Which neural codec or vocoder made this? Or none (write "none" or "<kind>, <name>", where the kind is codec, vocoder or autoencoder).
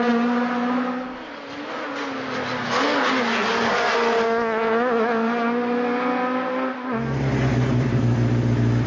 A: none